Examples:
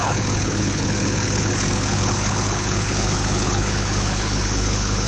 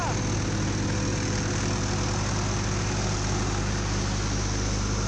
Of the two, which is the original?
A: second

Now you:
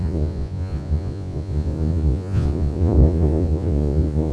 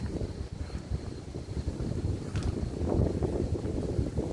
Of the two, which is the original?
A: second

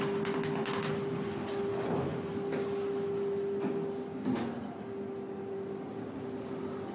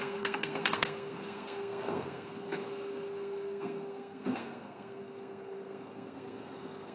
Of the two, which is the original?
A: first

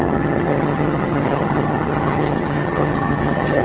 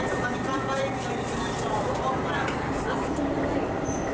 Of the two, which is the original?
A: second